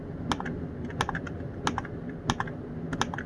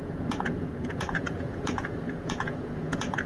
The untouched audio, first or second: first